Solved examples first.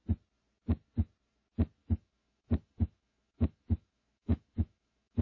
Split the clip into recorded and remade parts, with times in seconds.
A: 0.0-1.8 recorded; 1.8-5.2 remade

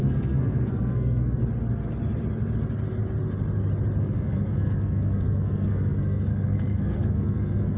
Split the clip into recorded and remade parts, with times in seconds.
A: 0.0-1.4 remade; 1.4-4.0 recorded; 4.0-7.8 remade

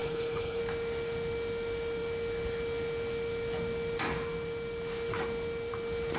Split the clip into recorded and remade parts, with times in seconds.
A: 0.0-0.6 remade; 0.6-6.2 recorded

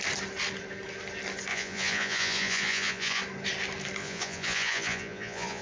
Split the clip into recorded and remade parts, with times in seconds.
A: 0.0-1.5 recorded; 1.5-3.2 remade; 3.2-4.0 recorded; 4.0-5.6 remade

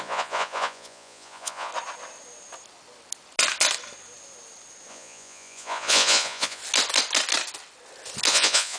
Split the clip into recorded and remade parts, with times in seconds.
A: 0.0-1.7 remade; 1.7-4.9 recorded; 4.9-6.6 remade; 6.6-8.3 recorded; 8.3-8.8 remade